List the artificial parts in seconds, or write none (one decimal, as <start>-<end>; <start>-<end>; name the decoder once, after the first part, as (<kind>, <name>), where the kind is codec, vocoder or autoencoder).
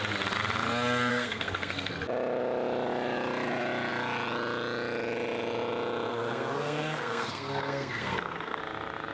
1.1-1.9 (codec, SNAC); 6.1-8.6